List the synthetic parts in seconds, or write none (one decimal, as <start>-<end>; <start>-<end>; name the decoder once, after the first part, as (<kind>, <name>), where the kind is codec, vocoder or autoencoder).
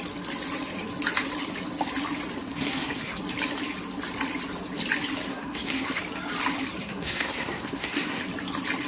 2.5-3.2 (codec, SNAC); 5.3-6.0; 6.8-8.2